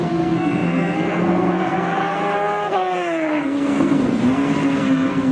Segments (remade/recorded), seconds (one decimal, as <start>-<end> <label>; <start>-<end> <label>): 0.0-5.3 remade